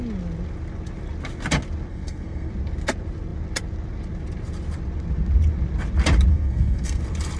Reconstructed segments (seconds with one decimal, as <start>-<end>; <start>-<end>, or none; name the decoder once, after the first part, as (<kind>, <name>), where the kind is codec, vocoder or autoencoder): 1.9-2.5 (codec, SNAC); 6.3-7.0